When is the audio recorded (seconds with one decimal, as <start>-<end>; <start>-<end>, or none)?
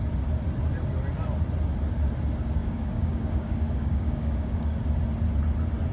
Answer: 0.0-2.6; 4.8-5.9